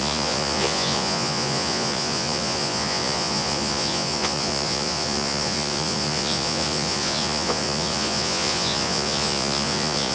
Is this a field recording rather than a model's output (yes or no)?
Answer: no